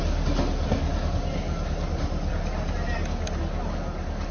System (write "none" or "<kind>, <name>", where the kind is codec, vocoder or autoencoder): none